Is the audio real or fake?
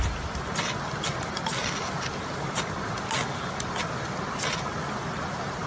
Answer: real